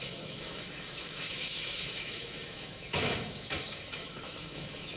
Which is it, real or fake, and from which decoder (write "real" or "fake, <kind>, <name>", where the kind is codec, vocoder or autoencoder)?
fake, autoencoder, DAC-VAE